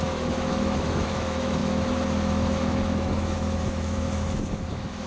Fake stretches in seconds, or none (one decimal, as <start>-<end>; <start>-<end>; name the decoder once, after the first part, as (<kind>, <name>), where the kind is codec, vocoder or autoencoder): 0.0-5.1 (autoencoder, DAC-VAE)

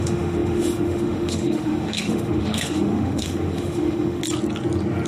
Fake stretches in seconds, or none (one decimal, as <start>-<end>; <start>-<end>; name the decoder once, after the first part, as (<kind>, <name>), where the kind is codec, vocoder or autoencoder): 0.0-4.2 (autoencoder, DAC-VAE)

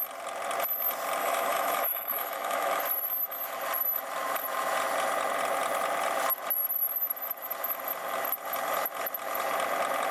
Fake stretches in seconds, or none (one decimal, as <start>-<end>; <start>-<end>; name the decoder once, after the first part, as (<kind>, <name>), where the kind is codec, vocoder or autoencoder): 1.2-2.8 (autoencoder, DAC-VAE)

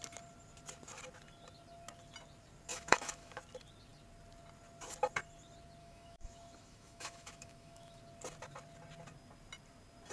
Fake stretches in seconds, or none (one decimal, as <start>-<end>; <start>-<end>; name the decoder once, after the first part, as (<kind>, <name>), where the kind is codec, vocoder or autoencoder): 2.7-3.4 (autoencoder, DAC-VAE); 5.8-8.0

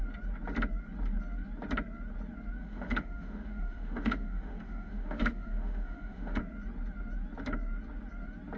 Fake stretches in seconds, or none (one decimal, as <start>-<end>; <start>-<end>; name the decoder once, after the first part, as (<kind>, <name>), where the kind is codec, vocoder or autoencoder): 2.6-6.4 (autoencoder, DAC-VAE)

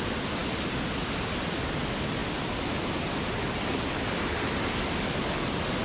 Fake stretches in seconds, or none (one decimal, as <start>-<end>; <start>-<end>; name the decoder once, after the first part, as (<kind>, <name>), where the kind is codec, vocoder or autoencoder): none

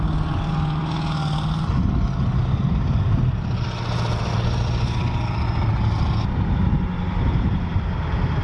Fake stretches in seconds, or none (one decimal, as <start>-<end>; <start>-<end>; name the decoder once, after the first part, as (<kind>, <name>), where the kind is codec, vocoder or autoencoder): none

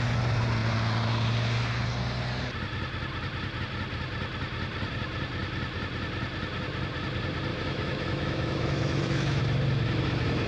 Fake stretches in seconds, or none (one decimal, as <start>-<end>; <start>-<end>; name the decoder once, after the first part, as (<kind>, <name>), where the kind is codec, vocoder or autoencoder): 7.5-9.4 (autoencoder, DAC-VAE)